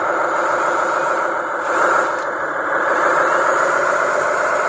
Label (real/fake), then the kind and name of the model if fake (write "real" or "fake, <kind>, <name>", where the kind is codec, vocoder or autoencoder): real